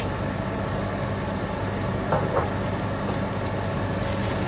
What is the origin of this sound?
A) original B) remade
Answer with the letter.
A